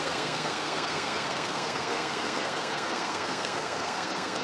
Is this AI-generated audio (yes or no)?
yes